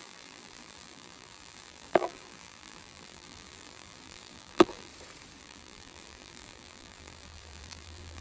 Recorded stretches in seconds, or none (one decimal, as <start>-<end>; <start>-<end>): 4.9-5.4